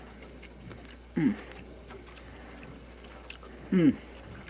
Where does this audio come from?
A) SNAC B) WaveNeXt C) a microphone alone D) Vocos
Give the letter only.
C